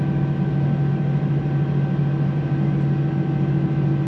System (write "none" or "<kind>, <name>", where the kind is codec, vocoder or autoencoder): none